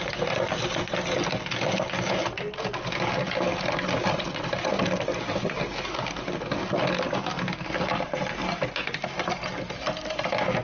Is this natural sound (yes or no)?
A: yes